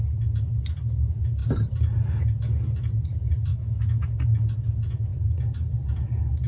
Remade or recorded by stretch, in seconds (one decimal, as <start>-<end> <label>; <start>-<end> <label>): 0.0-3.5 recorded; 3.5-4.1 remade; 4.1-6.5 recorded